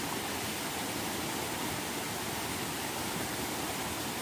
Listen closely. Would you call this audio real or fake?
real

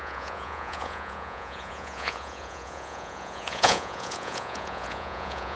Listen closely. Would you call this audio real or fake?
fake